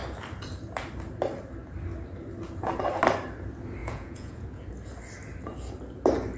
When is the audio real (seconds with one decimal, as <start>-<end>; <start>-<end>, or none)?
0.0-3.8; 4.6-6.4